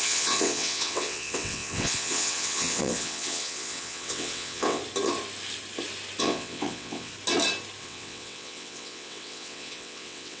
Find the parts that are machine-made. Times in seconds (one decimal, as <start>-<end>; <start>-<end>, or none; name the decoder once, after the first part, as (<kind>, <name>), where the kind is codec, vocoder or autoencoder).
0.0-4.8 (vocoder, WaveNeXt); 6.2-7.1; 7.8-10.4